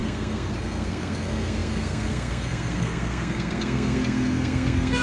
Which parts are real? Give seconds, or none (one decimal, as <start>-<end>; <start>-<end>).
none